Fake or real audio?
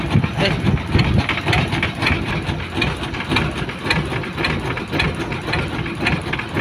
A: real